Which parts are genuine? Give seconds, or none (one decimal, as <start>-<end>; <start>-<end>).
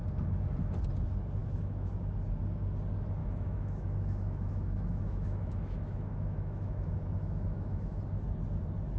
0.0-1.4; 1.9-3.2; 8.0-9.0